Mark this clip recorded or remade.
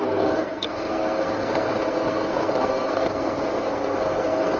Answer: remade